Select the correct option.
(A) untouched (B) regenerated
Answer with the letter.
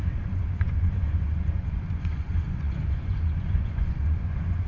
B